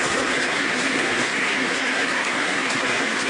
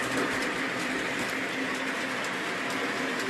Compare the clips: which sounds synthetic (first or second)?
first